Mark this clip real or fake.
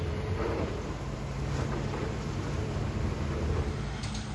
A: fake